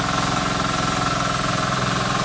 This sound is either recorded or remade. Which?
remade